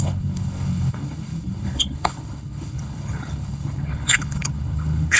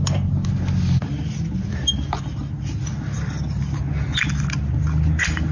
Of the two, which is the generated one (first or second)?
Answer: first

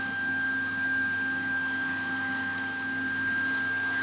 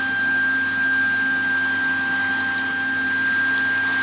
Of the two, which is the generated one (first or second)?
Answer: first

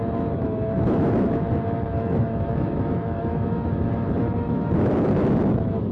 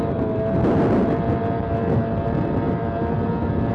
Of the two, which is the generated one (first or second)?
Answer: first